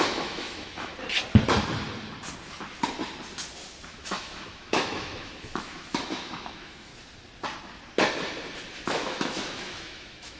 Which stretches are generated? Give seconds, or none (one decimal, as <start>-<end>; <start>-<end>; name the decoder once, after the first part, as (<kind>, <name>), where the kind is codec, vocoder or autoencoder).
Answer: 0.0-0.9 (autoencoder, DAC-VAE); 3.9-6.9; 8.9-10.4

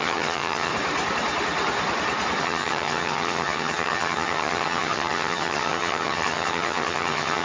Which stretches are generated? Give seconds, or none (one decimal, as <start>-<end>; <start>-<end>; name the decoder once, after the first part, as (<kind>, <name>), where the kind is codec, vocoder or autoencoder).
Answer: 0.0-0.7 (vocoder, HiFi-GAN); 2.4-7.4

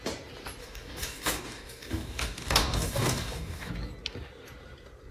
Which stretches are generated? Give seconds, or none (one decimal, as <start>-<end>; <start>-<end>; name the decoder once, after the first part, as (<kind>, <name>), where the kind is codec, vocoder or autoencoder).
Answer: 0.6-3.7 (codec, DAC)

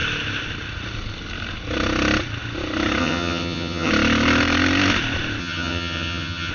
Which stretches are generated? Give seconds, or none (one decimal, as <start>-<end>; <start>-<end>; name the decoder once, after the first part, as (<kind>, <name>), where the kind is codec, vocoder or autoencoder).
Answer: 3.0-3.9 (vocoder, HiFi-GAN); 5.4-6.5

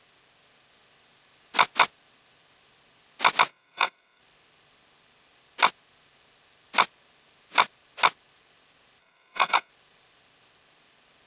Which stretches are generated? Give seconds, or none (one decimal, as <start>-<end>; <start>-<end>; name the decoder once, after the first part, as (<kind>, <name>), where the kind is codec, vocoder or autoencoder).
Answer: 3.5-4.2 (codec, SNAC); 9.0-9.7

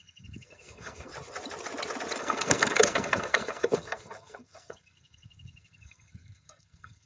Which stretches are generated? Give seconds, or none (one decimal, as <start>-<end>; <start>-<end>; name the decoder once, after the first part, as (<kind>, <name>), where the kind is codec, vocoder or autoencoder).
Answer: 0.0-1.1 (codec, SNAC); 2.2-7.1